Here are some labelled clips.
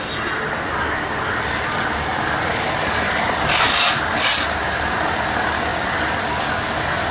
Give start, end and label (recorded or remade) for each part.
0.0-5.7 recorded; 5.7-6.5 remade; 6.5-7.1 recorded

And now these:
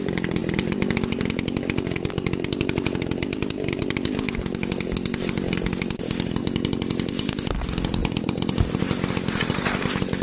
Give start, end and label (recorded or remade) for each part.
0.0-8.0 recorded; 8.0-8.8 remade; 8.8-10.2 recorded

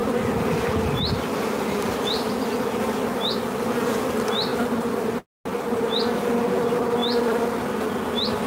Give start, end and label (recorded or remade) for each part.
0.0-8.5 recorded

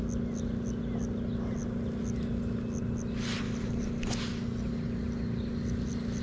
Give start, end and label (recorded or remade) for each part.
0.0-6.2 recorded

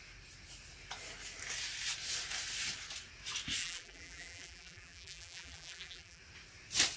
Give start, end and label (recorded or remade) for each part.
0.0-3.6 recorded; 3.6-6.2 remade; 6.2-7.0 recorded

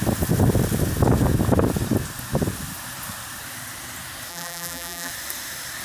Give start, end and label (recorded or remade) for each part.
0.0-4.3 recorded; 4.3-5.1 remade; 5.1-5.8 recorded

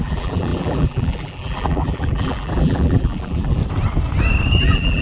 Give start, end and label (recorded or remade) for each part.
0.0-3.6 remade; 3.6-4.6 recorded; 4.6-5.0 remade